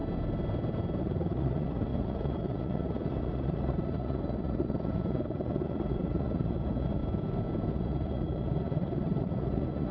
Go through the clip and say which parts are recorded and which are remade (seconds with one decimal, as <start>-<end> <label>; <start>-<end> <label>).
0.0-1.0 recorded; 1.0-7.0 remade; 7.0-7.7 recorded; 7.7-9.9 remade